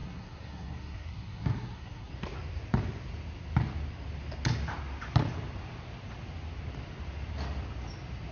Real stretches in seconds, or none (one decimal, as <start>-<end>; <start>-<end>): 2.1-8.3